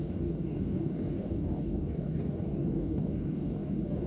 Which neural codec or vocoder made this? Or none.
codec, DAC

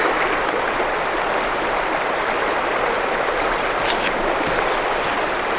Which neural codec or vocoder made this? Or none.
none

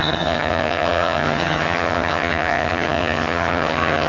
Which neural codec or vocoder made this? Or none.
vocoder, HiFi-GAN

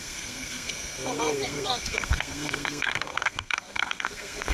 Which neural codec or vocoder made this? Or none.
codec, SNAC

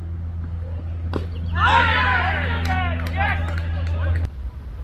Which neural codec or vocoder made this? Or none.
none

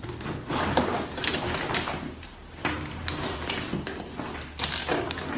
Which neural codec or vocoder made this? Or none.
none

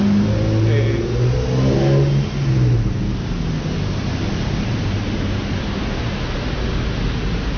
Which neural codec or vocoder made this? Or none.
none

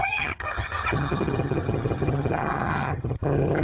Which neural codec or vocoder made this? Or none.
vocoder, HiFi-GAN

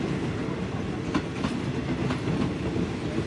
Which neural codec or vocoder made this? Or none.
none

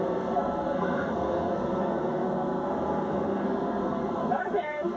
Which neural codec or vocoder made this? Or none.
codec, SNAC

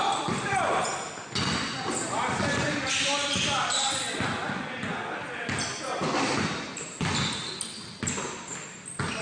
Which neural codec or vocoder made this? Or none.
none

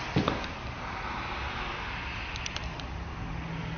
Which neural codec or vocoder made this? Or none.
none